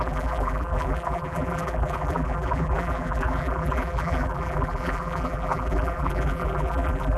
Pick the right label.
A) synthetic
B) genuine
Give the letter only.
A